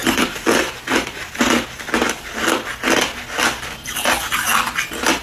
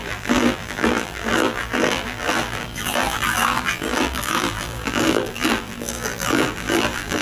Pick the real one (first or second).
first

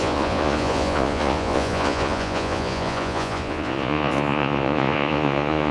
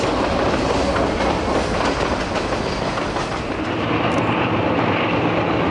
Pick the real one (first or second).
second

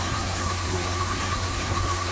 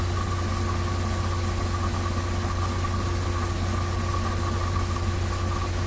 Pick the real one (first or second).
second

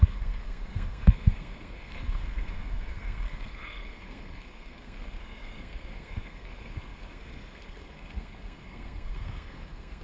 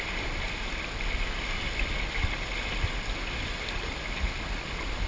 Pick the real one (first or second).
second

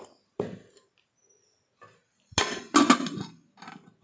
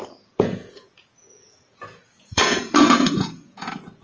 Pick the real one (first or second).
first